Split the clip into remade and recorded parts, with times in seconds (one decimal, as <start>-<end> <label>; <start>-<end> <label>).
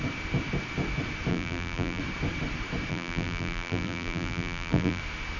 0.0-1.3 recorded; 1.3-2.0 remade; 2.0-2.9 recorded; 2.9-5.0 remade; 5.0-5.4 recorded